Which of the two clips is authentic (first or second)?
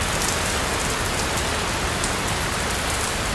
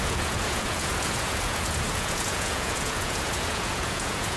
first